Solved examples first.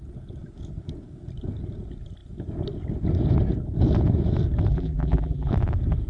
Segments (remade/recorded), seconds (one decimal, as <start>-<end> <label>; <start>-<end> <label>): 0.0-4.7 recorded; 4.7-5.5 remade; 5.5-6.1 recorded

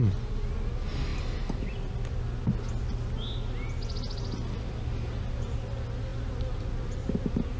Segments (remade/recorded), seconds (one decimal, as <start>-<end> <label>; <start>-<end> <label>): 0.0-7.6 recorded

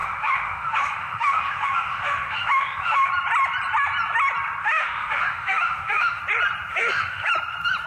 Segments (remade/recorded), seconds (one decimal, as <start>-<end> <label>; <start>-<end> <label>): 0.0-3.1 remade; 3.1-4.6 recorded; 4.6-6.2 remade; 6.2-6.7 recorded; 6.7-7.3 remade; 7.3-7.9 recorded

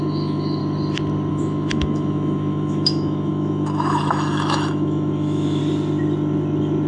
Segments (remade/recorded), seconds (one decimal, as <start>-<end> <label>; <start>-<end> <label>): 0.0-0.6 remade; 0.6-1.3 recorded; 1.3-5.6 remade; 5.6-6.9 recorded

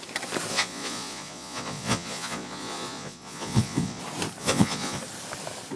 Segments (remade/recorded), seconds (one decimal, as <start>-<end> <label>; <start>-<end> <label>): 0.0-0.5 recorded; 0.5-4.0 remade; 4.0-4.4 recorded; 4.4-5.0 remade; 5.0-5.8 recorded